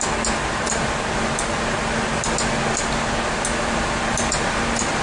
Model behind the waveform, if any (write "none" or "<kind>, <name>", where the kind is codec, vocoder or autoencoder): none